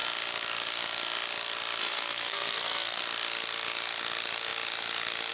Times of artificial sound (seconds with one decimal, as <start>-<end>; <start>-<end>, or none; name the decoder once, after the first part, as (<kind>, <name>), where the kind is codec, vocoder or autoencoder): 1.8-3.0 (codec, SNAC)